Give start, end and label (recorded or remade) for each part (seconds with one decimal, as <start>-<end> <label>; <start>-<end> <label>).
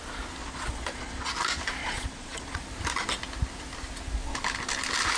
0.0-0.4 recorded; 0.4-1.3 remade; 1.3-1.8 recorded; 1.8-2.6 remade; 2.6-5.2 recorded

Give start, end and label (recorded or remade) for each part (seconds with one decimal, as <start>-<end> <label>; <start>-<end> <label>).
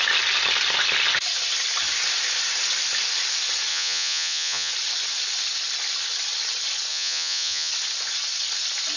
0.0-3.7 recorded; 3.7-4.7 remade; 4.7-6.9 recorded; 6.9-7.7 remade; 7.7-9.0 recorded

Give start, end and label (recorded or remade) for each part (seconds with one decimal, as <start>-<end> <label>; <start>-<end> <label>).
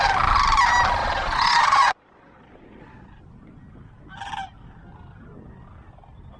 0.0-1.0 recorded; 1.0-3.2 remade; 3.2-6.4 recorded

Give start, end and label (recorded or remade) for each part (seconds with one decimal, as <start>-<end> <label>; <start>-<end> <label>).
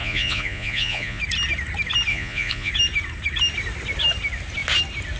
0.0-1.2 remade; 1.2-2.1 recorded; 2.1-2.7 remade; 2.7-5.2 recorded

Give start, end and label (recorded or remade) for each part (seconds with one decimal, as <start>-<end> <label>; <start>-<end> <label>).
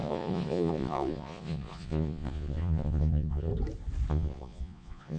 0.0-3.5 remade; 3.5-4.1 recorded; 4.1-5.2 remade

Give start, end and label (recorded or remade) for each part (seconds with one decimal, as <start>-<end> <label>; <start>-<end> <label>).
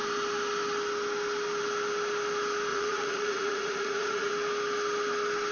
0.0-2.7 recorded; 2.7-4.3 remade; 4.3-5.5 recorded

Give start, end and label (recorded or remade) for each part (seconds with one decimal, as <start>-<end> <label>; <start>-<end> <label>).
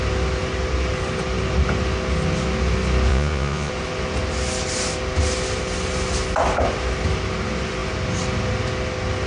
0.0-3.1 recorded; 3.1-3.7 remade; 3.7-9.3 recorded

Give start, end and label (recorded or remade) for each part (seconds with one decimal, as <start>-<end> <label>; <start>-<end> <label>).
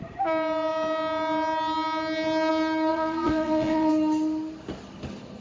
0.0-2.9 recorded; 2.9-3.9 remade; 3.9-5.4 recorded